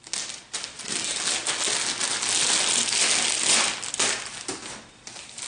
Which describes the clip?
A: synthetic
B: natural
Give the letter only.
B